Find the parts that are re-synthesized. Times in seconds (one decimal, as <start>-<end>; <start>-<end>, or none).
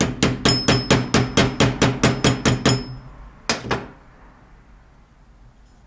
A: none